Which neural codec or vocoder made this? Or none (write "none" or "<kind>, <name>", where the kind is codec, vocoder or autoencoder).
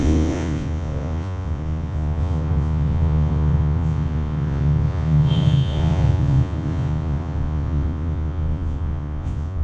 vocoder, Vocos